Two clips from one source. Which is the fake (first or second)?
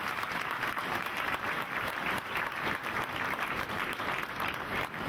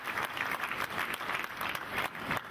first